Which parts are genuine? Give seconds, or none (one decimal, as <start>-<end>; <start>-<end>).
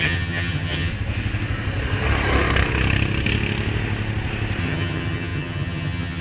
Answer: 0.9-4.6